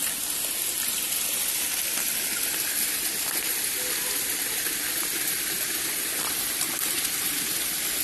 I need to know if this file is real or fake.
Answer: real